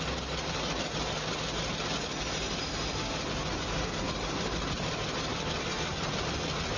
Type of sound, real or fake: real